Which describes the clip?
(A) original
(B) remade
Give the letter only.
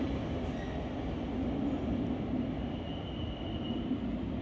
A